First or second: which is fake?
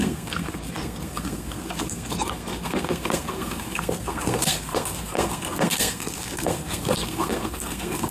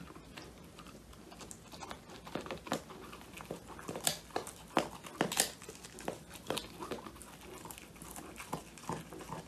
first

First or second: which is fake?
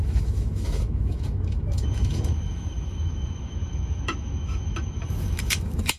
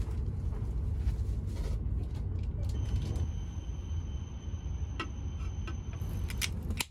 first